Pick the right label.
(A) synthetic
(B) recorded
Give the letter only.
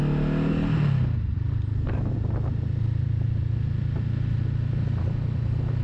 B